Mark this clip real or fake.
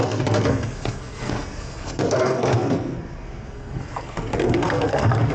fake